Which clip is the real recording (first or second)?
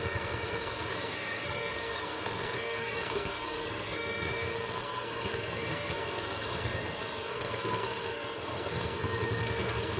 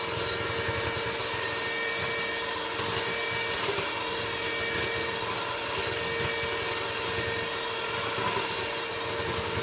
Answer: second